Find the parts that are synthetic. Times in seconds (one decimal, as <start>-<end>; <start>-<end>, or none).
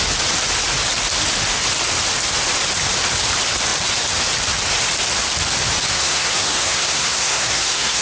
5.9-8.0